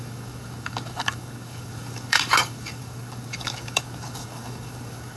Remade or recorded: remade